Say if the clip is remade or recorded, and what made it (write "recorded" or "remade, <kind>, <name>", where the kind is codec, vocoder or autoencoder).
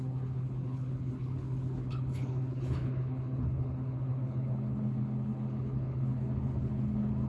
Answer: remade, codec, HILCodec